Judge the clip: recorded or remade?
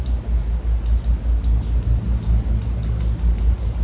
recorded